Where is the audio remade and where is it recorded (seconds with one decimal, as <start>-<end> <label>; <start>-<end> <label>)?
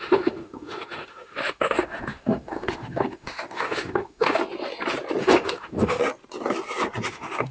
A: 0.0-4.4 remade; 4.4-5.2 recorded; 5.2-6.0 remade; 6.0-7.1 recorded; 7.1-7.5 remade